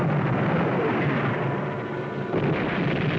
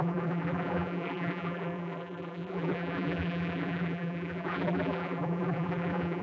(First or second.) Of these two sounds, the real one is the first